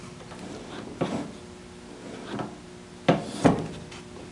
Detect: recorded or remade recorded